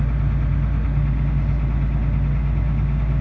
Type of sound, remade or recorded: recorded